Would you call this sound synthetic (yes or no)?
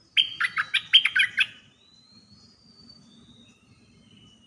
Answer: no